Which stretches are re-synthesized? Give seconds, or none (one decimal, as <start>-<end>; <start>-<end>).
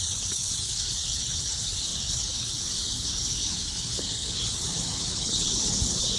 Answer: 0.0-6.2